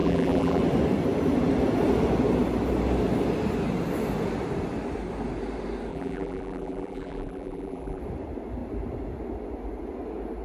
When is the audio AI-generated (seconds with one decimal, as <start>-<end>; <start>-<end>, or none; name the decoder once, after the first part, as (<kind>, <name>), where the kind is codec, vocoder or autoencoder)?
0.0-0.6 (vocoder, BigVGAN v2); 5.9-8.0